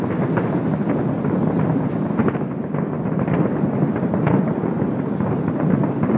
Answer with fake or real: real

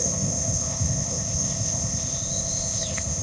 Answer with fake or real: fake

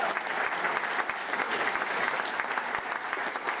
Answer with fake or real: real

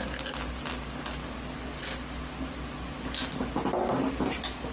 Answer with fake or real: real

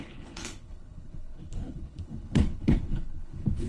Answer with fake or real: fake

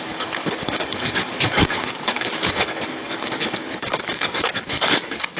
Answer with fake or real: fake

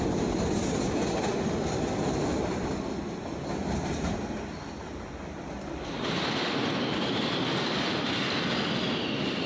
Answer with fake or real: real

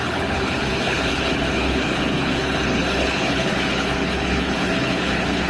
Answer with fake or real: fake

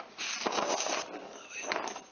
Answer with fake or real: real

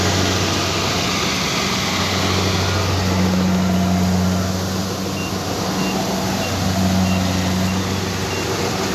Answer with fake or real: real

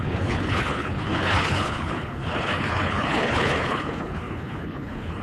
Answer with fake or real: fake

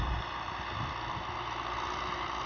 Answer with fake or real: real